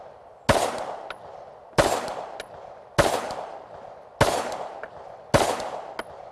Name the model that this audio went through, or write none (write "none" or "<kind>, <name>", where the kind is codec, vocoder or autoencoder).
none